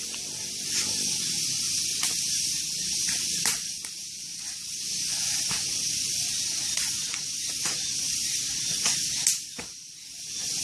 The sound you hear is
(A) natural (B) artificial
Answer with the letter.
A